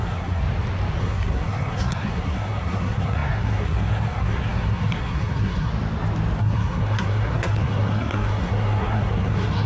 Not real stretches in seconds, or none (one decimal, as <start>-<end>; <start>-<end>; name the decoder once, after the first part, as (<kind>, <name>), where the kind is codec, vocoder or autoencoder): 0.0-0.4 (codec, SNAC); 1.0-5.7; 6.4-9.7